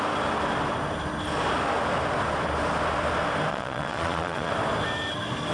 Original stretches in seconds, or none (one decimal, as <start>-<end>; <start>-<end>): 0.0-3.5; 4.5-5.5